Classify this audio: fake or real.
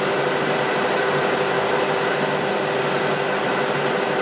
real